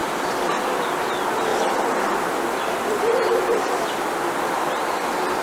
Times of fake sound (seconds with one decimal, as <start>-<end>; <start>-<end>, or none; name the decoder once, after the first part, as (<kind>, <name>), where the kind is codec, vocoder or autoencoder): none